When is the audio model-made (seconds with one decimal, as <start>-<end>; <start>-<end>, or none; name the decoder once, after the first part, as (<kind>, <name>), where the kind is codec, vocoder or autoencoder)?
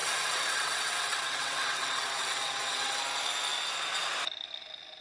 0.0-3.0 (vocoder, WaveNeXt)